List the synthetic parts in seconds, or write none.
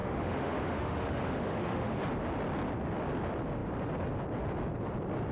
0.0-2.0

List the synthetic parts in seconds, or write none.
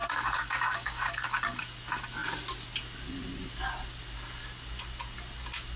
0.0-1.6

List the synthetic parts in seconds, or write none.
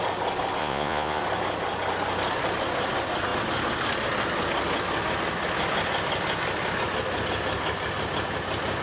0.6-1.2